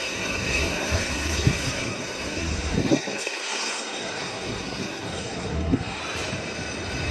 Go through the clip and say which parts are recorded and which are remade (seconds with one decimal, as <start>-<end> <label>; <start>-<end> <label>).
0.0-6.0 remade; 6.0-7.1 recorded